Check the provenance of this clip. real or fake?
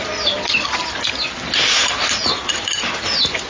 real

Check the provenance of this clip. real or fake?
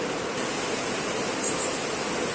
real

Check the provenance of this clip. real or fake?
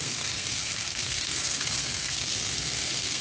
fake